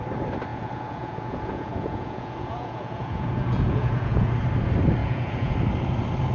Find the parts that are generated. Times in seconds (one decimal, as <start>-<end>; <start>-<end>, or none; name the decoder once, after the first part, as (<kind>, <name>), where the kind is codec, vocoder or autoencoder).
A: 0.5-4.3 (vocoder, Vocos); 5.0-5.5